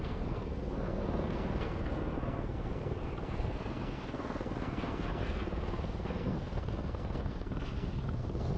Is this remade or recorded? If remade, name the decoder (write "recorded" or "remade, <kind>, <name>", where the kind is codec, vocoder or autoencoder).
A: remade, codec, SNAC